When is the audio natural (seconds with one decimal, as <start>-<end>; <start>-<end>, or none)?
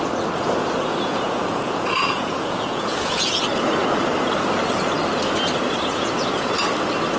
0.0-0.9; 3.4-5.9; 6.5-7.2